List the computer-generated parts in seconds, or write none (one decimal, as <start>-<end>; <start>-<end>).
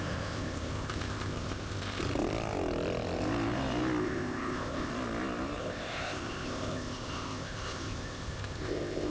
0.0-2.0; 4.0-4.9; 5.6-9.1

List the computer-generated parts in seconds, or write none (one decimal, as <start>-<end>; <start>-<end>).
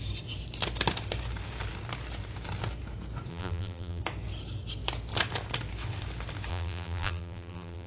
3.3-4.0; 6.5-7.9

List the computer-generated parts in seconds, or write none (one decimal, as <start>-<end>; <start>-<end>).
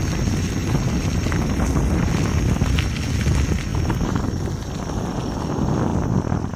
none